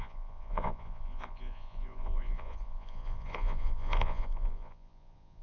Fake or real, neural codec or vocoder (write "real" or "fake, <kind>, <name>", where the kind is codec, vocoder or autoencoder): fake, vocoder, Vocos